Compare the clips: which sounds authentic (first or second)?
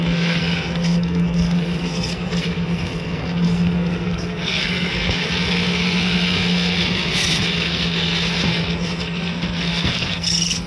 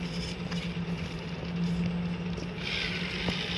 second